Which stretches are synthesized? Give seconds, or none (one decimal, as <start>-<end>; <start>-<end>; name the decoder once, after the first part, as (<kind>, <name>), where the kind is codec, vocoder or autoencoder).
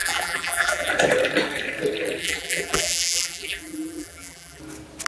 0.0-0.9 (vocoder, BigVGAN v2); 2.2-4.6